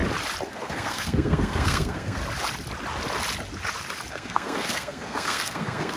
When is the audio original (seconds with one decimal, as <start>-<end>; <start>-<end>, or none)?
0.0-0.5; 2.2-4.1